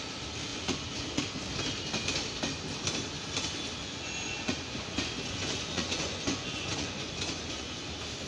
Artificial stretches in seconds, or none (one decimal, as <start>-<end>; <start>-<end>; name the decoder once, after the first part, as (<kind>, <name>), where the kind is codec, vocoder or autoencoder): 0.5-1.2 (vocoder, Vocos); 3.8-7.8